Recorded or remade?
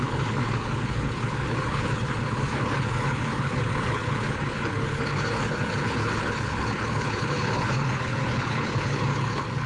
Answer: remade